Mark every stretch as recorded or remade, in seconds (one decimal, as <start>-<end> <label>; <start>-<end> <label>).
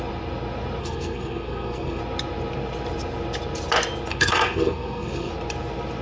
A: 0.0-0.8 recorded; 0.8-2.0 remade; 2.0-4.1 recorded; 4.1-5.3 remade; 5.3-6.0 recorded